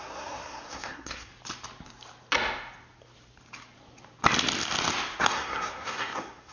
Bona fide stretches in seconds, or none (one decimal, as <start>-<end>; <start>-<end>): 1.3-5.2